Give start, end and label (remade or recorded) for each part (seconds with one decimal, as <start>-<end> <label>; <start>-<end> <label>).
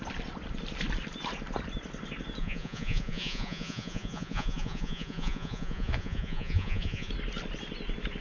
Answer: 0.0-2.4 recorded; 2.4-7.1 remade; 7.1-8.2 recorded